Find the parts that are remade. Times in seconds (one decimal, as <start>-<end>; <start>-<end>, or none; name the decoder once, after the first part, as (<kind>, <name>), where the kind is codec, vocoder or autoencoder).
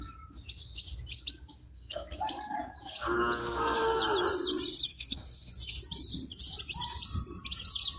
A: 1.6-2.2 (codec, SNAC); 3.4-4.0; 4.9-5.5